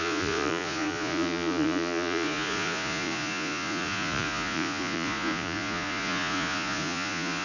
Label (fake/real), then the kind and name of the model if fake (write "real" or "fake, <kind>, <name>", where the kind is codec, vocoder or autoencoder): fake, vocoder, Vocos